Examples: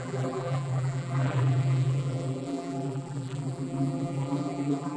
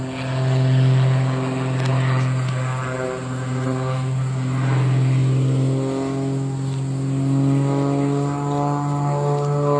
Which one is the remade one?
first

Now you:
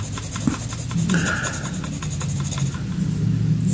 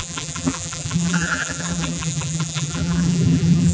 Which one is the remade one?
second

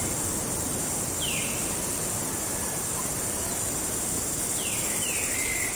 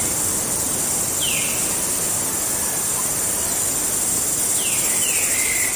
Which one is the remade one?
first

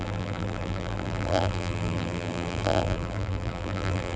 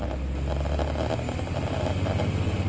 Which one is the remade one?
first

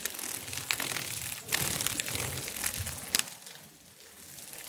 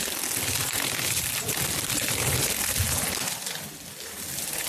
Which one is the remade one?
second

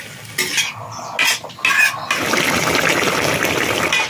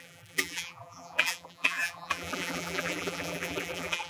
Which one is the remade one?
second